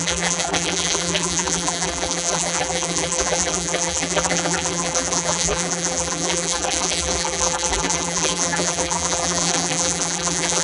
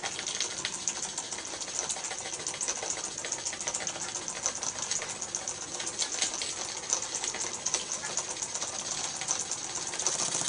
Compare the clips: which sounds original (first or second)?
second